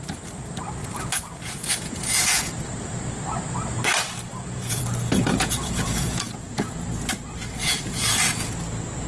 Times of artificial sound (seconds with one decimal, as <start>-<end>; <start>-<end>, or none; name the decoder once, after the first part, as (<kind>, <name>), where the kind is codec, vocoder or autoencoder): 0.8-2.5 (vocoder, Vocos); 4.3-4.8; 5.3-7.1; 7.6-8.6